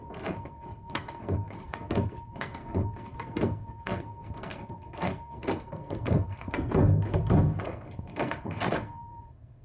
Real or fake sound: fake